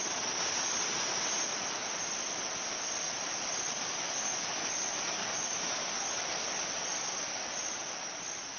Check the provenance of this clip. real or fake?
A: real